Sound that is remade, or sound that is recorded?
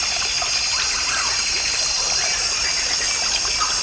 recorded